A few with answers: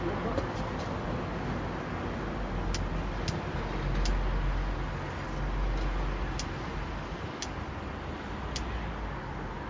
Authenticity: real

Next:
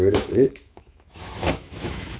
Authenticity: fake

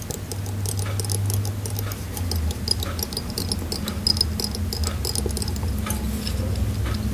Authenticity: real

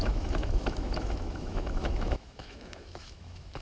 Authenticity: fake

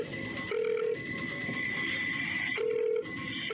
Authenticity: real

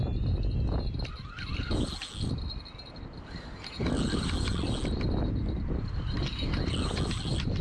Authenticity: real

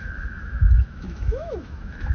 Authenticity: fake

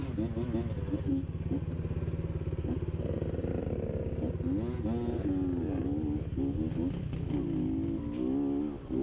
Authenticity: real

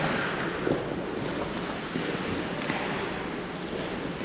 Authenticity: real